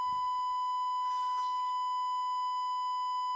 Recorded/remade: remade